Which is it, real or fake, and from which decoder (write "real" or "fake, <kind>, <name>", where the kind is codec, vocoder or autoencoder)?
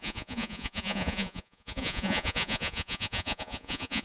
fake, vocoder, Vocos